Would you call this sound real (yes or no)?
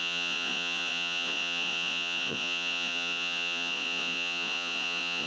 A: no